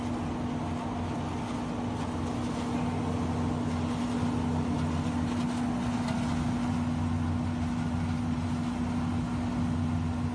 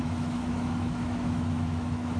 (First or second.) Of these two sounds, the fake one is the second